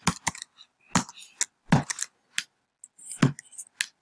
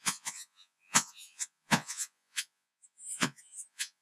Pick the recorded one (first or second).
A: first